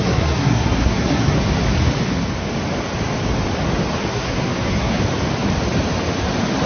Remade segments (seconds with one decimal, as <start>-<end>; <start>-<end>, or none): 0.0-1.4; 4.1-5.0